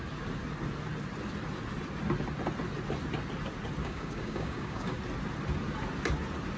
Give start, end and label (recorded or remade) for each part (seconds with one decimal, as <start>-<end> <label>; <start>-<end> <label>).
0.0-3.8 recorded; 3.8-5.0 remade; 5.0-6.6 recorded